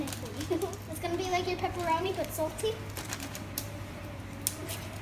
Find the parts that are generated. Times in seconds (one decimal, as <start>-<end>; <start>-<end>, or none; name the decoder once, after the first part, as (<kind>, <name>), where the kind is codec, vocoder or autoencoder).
1.3-4.2 (vocoder, BigVGAN v2)